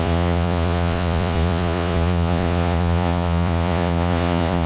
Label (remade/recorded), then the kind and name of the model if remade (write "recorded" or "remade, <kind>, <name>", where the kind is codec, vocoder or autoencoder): remade, vocoder, Vocos